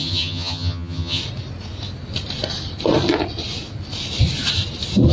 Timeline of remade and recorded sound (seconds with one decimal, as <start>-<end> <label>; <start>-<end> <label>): 0.0-1.2 remade; 1.2-5.1 recorded